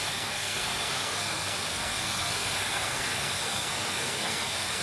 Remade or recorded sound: remade